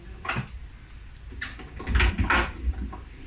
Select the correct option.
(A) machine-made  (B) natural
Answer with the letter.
B